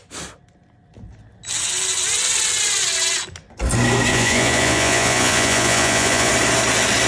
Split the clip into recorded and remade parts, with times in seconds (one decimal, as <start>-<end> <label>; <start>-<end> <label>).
0.0-4.1 recorded; 4.1-6.3 remade; 6.3-7.1 recorded